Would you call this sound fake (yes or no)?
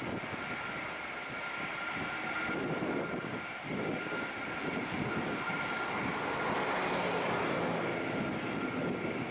no